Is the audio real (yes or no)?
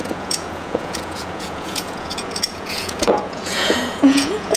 no